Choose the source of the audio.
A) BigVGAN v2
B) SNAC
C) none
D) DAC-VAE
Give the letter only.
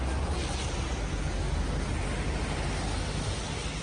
C